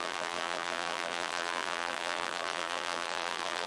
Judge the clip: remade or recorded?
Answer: remade